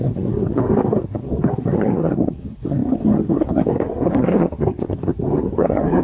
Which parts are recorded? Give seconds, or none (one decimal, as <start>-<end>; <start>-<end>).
none